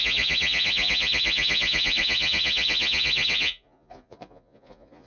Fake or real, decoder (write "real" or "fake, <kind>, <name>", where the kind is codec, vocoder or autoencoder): fake, vocoder, Vocos